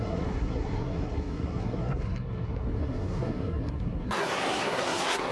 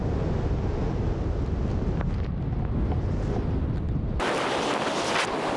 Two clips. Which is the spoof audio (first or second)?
first